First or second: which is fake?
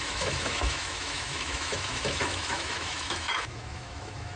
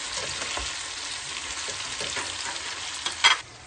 first